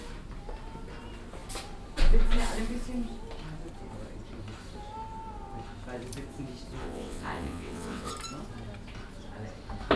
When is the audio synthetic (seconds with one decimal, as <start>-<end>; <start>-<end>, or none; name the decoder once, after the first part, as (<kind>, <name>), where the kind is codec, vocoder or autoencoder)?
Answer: 6.8-8.1 (vocoder, WaveNeXt)

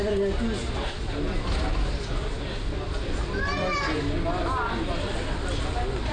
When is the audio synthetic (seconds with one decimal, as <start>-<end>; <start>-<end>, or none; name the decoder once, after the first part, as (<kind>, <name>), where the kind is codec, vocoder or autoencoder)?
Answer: none

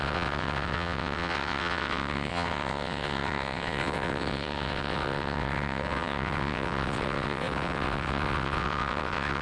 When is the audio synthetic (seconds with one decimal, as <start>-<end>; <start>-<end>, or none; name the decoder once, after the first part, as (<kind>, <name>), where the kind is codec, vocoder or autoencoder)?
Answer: 0.0-9.4 (vocoder, WaveNeXt)

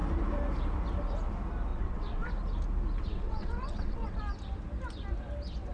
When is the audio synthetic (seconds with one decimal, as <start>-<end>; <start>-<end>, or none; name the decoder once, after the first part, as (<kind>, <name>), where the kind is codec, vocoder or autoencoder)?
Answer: 1.7-2.3 (vocoder, WaveNeXt); 3.0-4.2

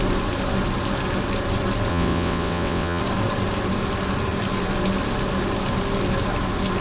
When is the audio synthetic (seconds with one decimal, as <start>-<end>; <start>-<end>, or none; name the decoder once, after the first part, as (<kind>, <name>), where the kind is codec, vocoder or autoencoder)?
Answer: 1.9-3.0 (vocoder, WaveNeXt)